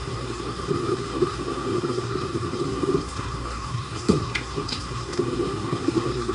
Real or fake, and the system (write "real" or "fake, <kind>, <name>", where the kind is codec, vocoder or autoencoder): fake, codec, SNAC